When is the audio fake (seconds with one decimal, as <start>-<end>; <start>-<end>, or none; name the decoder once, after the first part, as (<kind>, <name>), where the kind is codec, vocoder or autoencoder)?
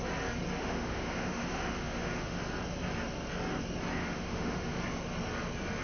0.6-2.4 (autoencoder, DAC-VAE); 4.0-4.8